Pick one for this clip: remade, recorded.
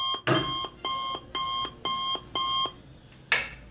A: recorded